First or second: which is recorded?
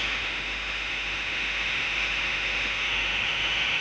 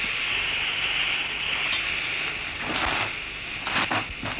second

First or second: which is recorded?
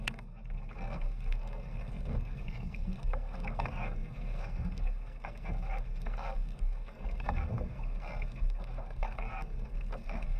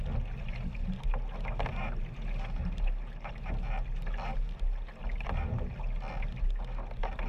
second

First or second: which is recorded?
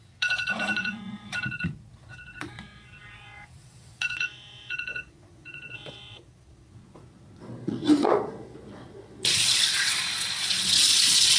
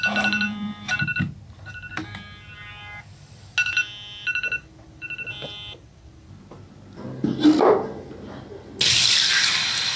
second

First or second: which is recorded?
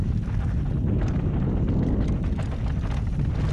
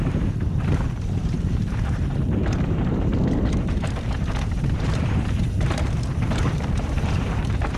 first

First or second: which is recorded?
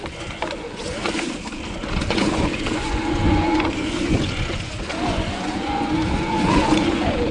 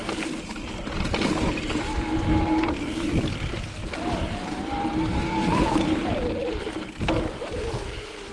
second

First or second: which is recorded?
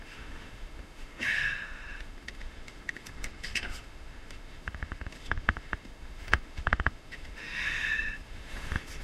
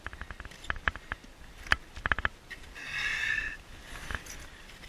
second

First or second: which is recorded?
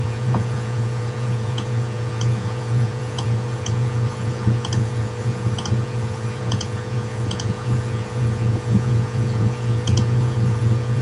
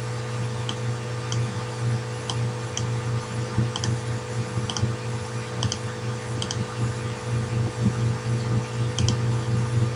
second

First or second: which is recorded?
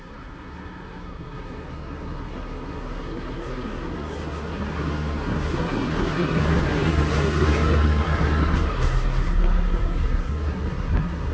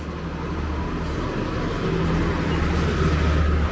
second